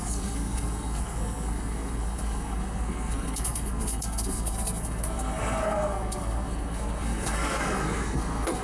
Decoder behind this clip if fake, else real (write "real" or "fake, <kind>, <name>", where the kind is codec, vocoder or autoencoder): fake, codec, SNAC